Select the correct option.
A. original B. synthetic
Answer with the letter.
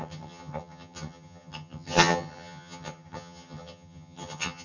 B